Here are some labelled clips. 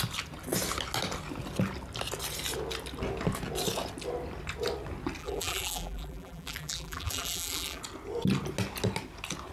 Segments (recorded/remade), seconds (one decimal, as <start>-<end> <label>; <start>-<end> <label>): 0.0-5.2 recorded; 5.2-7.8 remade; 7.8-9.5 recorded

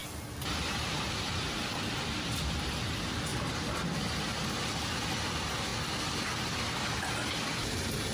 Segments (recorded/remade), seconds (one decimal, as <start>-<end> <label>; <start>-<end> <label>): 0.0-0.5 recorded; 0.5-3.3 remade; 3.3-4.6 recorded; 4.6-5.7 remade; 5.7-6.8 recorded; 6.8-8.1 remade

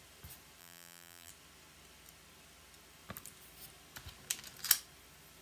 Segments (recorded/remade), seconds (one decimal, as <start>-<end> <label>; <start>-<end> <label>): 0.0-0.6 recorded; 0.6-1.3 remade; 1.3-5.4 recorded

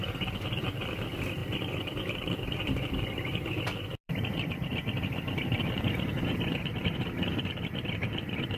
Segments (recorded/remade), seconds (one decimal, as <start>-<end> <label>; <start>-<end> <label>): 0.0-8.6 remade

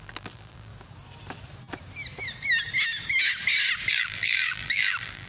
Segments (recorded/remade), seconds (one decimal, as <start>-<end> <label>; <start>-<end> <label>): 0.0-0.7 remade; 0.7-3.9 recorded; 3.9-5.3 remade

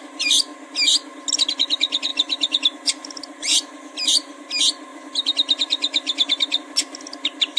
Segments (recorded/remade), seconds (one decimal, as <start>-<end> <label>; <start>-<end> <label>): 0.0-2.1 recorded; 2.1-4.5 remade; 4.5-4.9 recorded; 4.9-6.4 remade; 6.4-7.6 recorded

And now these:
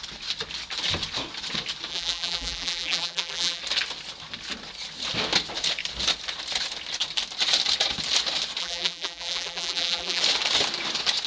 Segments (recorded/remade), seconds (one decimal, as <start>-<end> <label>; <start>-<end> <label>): 0.0-1.9 recorded; 1.9-3.6 remade; 3.6-8.6 recorded; 8.6-10.2 remade; 10.2-11.3 recorded